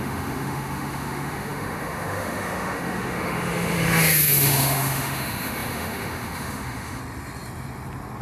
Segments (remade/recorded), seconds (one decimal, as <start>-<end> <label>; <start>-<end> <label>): 0.0-7.0 remade; 7.0-8.2 recorded